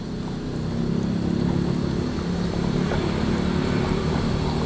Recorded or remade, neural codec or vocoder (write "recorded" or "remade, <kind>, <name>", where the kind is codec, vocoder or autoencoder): recorded